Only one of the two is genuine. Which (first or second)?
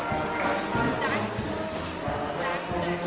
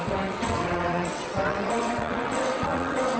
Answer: first